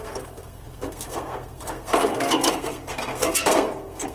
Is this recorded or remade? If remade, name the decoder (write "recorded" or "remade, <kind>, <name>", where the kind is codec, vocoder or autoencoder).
remade, codec, SNAC